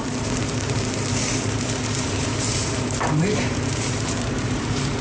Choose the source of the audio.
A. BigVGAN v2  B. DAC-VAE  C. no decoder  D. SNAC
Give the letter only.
A